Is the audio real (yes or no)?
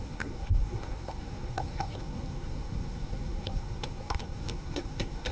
no